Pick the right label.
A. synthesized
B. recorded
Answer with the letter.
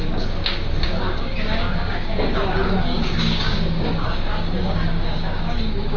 A